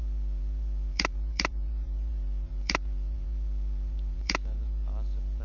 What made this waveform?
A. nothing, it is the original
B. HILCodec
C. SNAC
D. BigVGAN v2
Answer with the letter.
D